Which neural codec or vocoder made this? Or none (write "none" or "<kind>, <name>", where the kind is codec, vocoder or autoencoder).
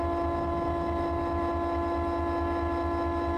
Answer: none